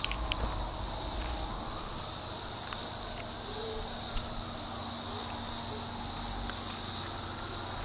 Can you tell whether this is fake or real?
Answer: real